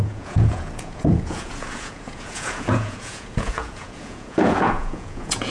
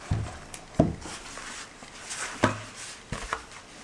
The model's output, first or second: first